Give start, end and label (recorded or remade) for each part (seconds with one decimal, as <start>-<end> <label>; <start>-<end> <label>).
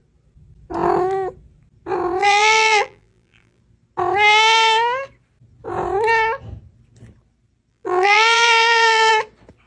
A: 0.0-2.2 recorded; 2.2-3.6 remade; 3.6-7.7 recorded; 7.7-9.1 remade; 9.1-9.7 recorded